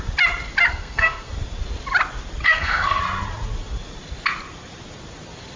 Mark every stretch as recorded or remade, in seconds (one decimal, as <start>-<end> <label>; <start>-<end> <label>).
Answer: 0.0-0.7 recorded; 0.7-1.3 remade; 1.3-2.4 recorded; 2.4-3.0 remade; 3.0-5.6 recorded